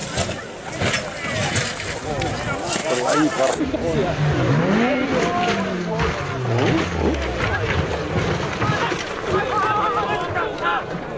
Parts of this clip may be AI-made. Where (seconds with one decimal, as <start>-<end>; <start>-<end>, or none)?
none